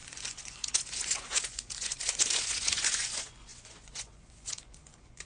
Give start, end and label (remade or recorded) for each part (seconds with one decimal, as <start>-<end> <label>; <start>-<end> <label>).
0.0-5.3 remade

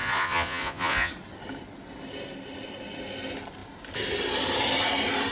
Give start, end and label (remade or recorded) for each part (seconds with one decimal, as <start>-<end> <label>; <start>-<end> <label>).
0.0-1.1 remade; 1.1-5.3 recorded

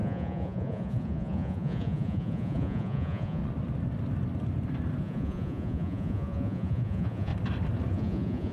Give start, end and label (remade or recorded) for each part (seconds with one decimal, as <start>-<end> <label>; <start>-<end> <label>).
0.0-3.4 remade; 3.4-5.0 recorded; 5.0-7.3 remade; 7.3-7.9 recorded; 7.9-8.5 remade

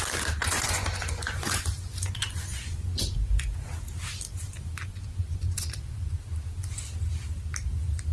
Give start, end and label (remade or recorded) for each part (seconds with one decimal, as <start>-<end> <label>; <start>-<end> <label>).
0.0-0.4 recorded; 0.4-3.7 remade; 3.7-4.9 recorded; 4.9-6.1 remade; 6.1-8.1 recorded

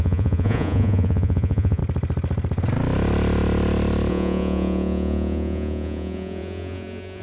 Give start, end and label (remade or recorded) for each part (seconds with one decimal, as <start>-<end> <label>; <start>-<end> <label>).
0.0-1.8 remade; 1.8-4.1 recorded; 4.1-7.2 remade